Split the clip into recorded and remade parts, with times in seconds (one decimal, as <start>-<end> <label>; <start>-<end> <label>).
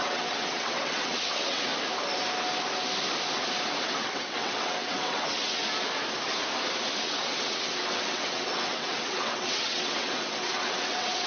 0.0-1.7 remade; 1.7-4.0 recorded; 4.0-5.6 remade; 5.6-7.0 recorded; 7.0-11.3 remade